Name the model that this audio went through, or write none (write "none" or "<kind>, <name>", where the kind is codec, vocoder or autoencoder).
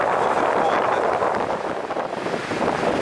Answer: vocoder, BigVGAN v2